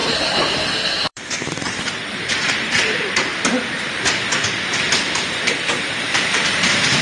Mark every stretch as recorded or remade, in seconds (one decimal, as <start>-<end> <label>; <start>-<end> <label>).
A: 0.0-3.3 remade; 3.3-6.0 recorded; 6.0-7.0 remade